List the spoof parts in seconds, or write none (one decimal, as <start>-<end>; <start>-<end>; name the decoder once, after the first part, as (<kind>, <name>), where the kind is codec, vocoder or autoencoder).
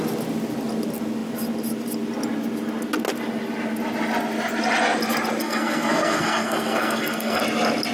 5.4-7.4 (codec, SNAC)